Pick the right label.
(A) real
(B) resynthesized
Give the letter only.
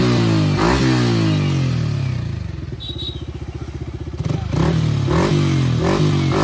A